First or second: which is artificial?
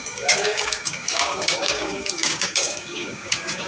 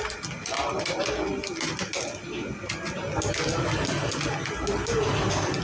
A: first